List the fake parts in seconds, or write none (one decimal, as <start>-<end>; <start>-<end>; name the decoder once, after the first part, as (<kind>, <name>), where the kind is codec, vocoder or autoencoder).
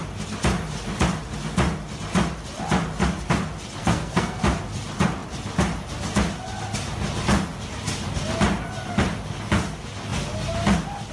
3.8-4.4 (codec, SNAC)